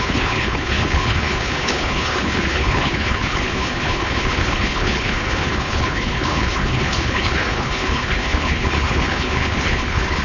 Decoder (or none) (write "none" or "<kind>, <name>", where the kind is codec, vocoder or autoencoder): codec, HILCodec